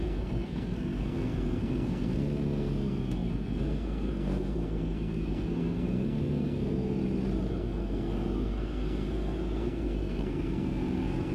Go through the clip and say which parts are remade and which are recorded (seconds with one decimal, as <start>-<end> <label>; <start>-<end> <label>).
0.0-7.0 remade; 7.0-7.5 recorded; 7.5-11.3 remade